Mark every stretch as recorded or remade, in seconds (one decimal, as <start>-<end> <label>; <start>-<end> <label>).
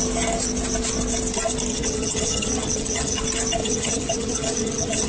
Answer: 0.0-1.7 recorded; 1.7-3.2 remade; 3.2-3.6 recorded; 3.6-5.1 remade